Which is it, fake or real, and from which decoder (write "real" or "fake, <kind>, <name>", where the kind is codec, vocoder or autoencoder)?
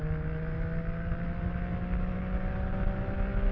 real